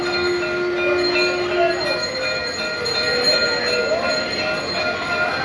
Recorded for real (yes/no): yes